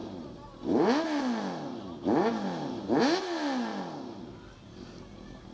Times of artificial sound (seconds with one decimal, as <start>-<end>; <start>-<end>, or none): none